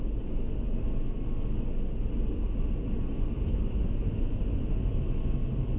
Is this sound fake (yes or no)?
no